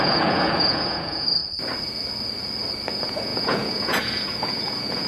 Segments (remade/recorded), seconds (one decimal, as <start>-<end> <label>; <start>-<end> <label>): 0.0-1.4 remade; 1.4-2.9 recorded; 2.9-5.1 remade